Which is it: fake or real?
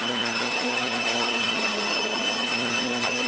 fake